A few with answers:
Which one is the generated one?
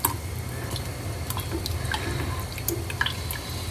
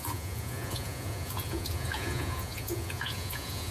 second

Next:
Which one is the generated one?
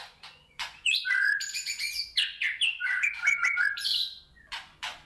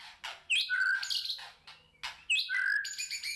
first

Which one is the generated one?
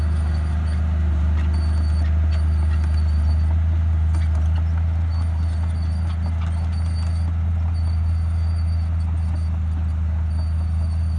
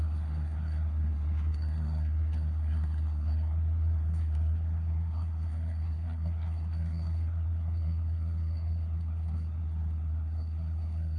second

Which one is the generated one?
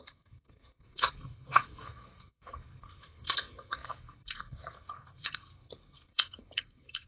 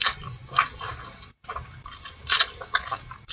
first